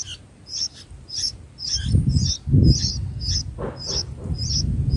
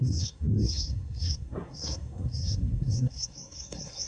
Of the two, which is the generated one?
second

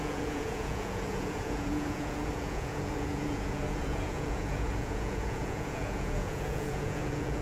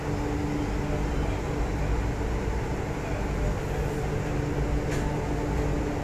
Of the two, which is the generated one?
first